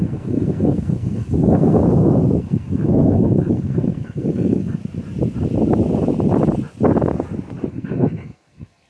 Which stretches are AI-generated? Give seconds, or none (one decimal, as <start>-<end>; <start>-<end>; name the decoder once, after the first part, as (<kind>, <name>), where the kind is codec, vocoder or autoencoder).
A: 0.0-1.8 (codec, SNAC); 2.4-4.8; 7.7-8.9

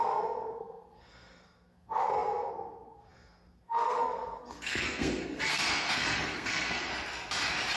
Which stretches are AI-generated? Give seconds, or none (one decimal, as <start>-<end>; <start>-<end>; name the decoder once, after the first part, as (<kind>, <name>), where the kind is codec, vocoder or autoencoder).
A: 0.0-6.9 (codec, SNAC)

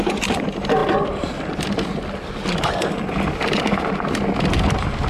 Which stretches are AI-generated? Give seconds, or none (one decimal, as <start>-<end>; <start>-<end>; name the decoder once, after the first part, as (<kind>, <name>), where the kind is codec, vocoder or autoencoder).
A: none